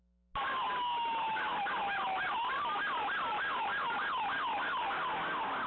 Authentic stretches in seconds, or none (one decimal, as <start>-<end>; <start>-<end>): 0.0-5.7